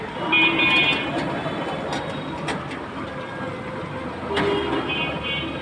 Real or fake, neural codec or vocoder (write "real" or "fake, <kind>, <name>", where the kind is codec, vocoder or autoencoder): real